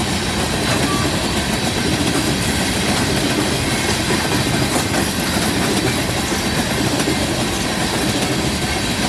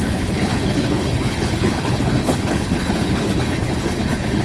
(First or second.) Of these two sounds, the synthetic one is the second